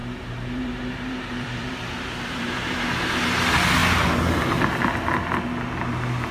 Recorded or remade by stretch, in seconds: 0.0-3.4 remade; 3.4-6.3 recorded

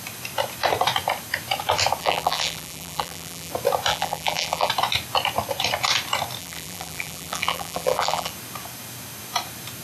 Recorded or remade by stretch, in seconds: 0.0-2.0 recorded; 2.0-3.5 remade; 3.5-3.9 recorded; 3.9-4.7 remade; 4.7-6.4 recorded; 6.4-8.3 remade; 8.3-9.8 recorded

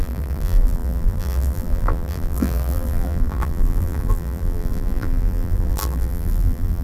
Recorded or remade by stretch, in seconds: 0.0-6.8 remade